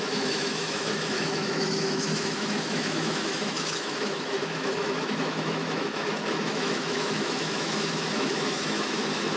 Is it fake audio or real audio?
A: fake